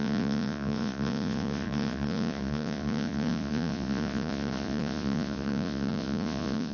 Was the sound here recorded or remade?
remade